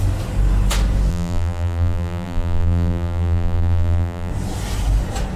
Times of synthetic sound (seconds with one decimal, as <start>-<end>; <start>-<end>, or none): 1.1-4.3